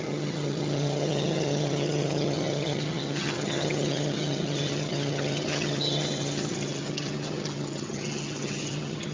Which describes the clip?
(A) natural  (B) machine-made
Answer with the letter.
B